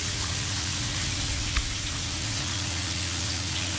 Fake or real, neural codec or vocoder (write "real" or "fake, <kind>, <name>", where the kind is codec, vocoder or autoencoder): fake, vocoder, Vocos